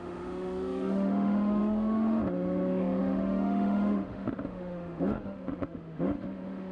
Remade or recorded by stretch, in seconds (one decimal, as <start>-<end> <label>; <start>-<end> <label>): 0.0-6.7 remade